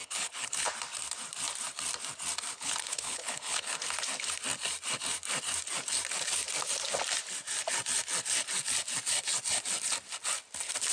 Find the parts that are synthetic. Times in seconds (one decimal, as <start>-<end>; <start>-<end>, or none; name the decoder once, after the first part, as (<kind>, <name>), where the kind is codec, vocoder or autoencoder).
0.0-0.7 (codec, HILCodec); 2.5-3.8